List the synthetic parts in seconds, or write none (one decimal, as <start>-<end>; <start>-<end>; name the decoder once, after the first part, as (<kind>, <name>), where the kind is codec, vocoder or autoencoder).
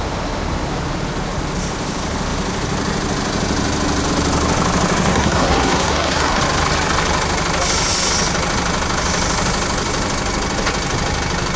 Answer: 5.1-6.4 (codec, SNAC)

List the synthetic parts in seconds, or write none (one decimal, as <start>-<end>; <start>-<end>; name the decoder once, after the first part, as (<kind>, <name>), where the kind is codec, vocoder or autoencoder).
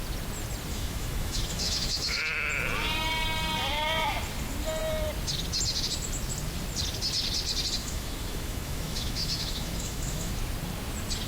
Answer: 0.7-2.2 (autoencoder, DAC-VAE); 7.8-10.3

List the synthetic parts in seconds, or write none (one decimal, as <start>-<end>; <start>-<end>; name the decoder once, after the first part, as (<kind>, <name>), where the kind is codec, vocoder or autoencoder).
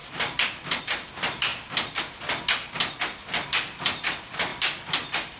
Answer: 0.0-0.8 (vocoder, BigVGAN v2); 1.5-2.0; 4.5-5.4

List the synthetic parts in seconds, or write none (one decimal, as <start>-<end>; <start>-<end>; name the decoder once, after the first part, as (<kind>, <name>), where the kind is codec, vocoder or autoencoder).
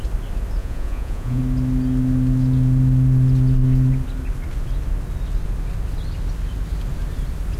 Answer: 0.6-1.4 (vocoder, Vocos)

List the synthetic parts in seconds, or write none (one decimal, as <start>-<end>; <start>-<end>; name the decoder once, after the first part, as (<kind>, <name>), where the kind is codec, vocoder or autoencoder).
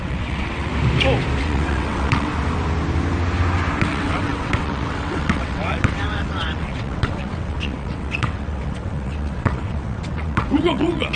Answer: 0.0-0.7 (vocoder, WaveNeXt); 1.4-2.3; 3.8-11.2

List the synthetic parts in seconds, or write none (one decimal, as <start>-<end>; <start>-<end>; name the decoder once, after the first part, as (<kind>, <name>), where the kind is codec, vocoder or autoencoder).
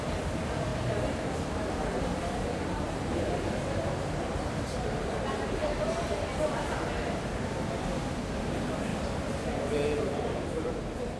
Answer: 0.0-0.7 (vocoder, BigVGAN v2); 2.1-5.6; 6.6-8.9; 10.0-11.2